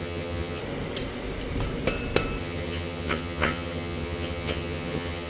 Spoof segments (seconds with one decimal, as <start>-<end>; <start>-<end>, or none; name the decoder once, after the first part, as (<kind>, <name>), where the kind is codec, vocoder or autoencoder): 0.0-0.6 (vocoder, HiFi-GAN); 2.4-5.3